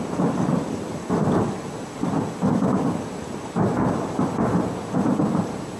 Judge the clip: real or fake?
real